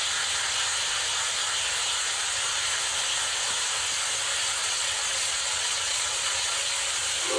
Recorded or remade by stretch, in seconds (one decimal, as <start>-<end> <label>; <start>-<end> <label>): 0.0-4.6 recorded; 4.6-6.7 remade; 6.7-7.4 recorded